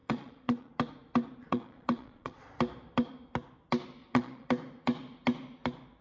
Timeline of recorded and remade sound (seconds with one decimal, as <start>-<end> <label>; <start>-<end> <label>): 0.0-0.7 remade; 0.7-1.4 recorded; 1.4-2.5 remade; 2.5-4.0 recorded; 4.0-4.5 remade; 4.5-6.0 recorded